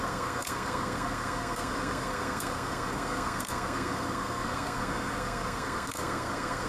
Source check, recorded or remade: remade